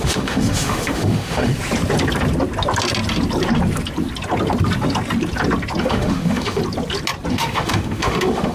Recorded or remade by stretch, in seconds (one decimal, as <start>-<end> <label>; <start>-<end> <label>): 0.0-1.5 remade; 1.5-5.8 recorded; 5.8-6.6 remade; 6.6-7.3 recorded; 7.3-8.5 remade